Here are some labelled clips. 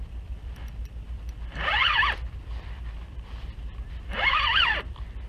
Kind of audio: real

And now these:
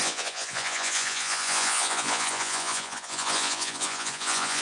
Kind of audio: fake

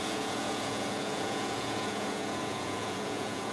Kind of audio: fake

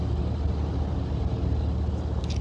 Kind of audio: real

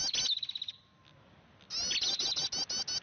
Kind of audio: real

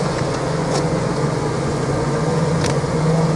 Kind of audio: fake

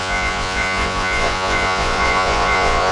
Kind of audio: fake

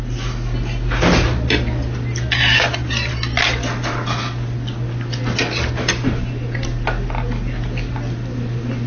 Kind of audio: real